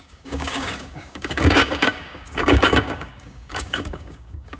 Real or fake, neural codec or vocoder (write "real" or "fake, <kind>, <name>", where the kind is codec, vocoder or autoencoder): fake, codec, DAC